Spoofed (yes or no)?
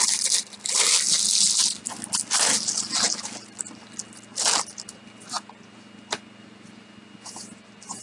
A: no